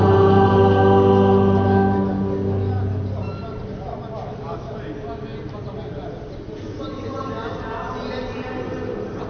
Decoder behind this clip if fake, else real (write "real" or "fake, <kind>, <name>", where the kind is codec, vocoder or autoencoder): real